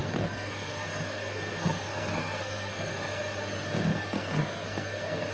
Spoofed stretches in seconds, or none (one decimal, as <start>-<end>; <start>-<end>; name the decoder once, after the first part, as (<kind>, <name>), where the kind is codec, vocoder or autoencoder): 0.0-3.2 (codec, SNAC); 3.9-5.3